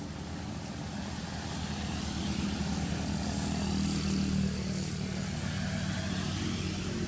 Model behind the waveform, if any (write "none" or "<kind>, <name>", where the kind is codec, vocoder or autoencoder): none